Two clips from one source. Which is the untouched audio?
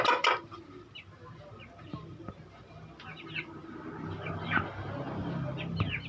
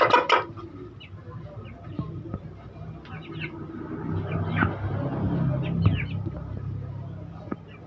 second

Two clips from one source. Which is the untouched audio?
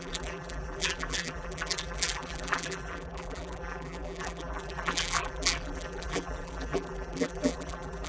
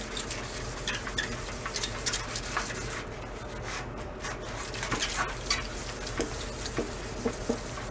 second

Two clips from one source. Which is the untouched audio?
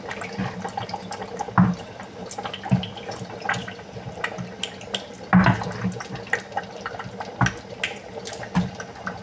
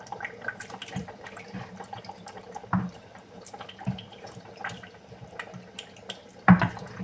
first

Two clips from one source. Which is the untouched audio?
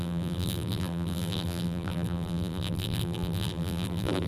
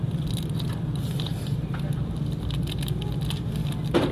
second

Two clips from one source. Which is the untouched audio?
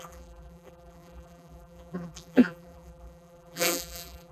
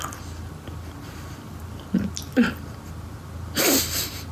second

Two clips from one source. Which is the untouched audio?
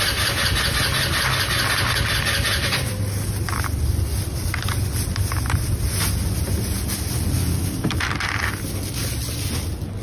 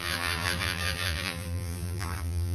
first